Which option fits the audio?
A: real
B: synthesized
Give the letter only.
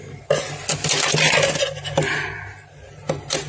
A